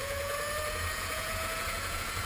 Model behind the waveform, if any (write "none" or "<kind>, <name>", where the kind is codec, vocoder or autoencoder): vocoder, Vocos